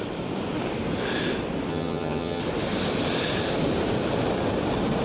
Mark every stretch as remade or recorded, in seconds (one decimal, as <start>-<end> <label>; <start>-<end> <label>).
0.0-1.7 recorded; 1.7-2.4 remade; 2.4-5.0 recorded